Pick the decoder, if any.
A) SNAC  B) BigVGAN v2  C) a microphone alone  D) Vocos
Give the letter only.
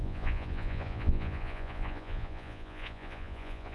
D